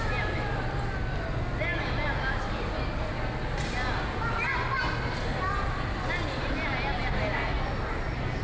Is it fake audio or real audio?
real